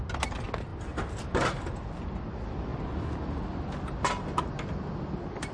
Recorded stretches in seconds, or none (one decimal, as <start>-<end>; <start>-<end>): 0.0-5.5